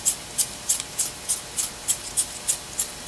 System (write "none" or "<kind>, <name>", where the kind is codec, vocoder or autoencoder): none